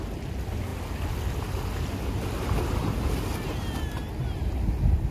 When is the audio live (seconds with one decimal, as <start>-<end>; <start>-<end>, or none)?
0.0-5.1